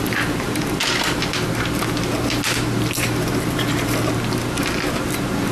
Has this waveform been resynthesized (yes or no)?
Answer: no